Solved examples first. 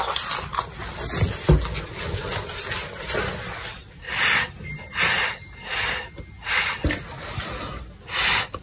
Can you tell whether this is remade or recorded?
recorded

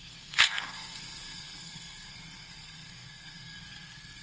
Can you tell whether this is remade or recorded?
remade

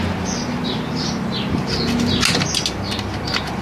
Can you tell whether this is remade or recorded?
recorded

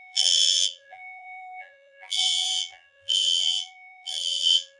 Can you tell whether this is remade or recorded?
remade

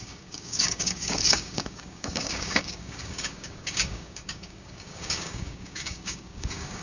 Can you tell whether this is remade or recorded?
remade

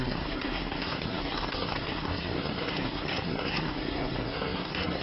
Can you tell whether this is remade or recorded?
remade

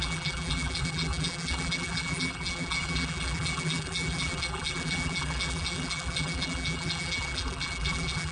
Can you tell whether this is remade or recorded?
remade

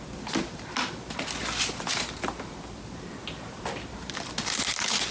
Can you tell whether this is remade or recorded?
recorded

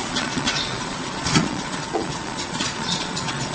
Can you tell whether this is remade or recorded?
remade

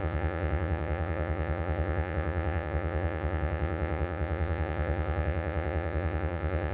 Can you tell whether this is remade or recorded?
remade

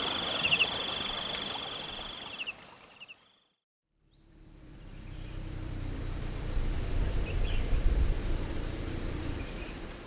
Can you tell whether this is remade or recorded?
remade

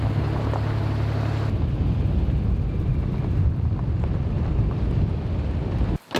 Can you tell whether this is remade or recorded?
recorded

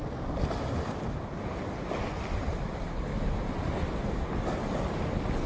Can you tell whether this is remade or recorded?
recorded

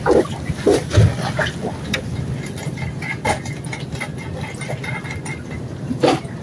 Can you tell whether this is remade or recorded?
recorded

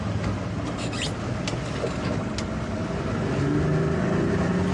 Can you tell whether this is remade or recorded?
recorded